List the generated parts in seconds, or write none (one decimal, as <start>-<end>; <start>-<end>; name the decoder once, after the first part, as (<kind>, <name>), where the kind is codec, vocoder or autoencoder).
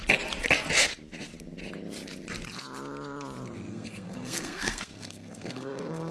3.7-6.1 (codec, SNAC)